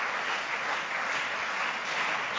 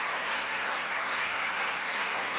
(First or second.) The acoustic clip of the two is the first